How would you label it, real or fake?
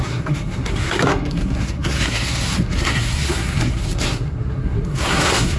fake